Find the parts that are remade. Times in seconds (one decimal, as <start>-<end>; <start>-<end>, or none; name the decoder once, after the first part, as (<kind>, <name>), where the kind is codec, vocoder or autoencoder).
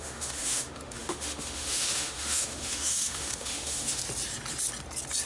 0.0-4.0 (autoencoder, DAC-VAE)